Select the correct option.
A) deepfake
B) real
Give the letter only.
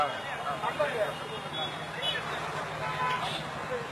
B